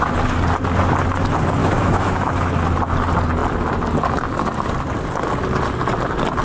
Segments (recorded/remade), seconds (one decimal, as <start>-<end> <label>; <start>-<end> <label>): 0.0-1.6 recorded; 1.6-2.3 remade; 2.3-6.4 recorded